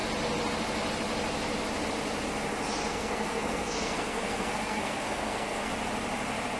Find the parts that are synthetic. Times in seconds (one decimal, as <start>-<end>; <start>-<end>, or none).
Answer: 2.9-5.7